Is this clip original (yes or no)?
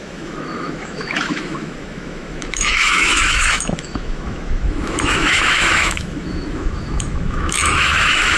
no